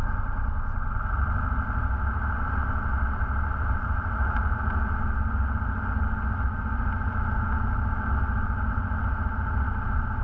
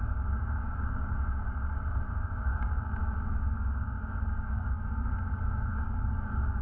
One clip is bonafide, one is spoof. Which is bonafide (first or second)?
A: first